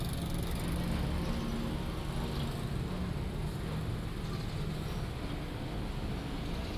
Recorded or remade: recorded